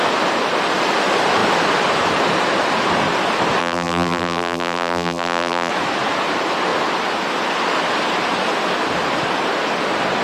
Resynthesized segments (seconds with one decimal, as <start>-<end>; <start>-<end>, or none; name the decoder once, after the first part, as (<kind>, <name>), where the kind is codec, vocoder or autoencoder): 3.6-5.7 (vocoder, BigVGAN v2)